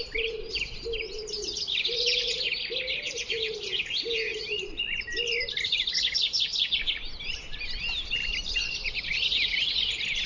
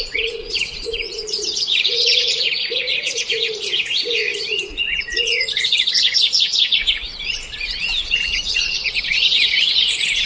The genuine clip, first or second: first